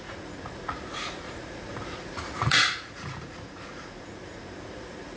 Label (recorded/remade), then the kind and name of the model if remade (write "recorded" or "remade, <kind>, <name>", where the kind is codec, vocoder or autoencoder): remade, vocoder, Vocos